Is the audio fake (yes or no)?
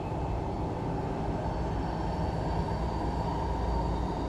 no